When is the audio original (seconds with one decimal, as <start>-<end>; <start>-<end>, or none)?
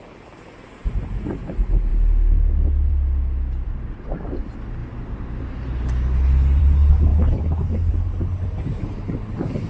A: 0.0-9.7